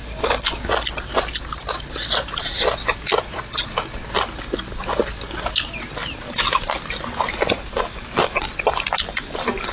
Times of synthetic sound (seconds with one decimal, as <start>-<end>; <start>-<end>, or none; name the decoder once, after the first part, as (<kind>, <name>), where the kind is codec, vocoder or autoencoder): 0.0-0.7 (codec, DAC)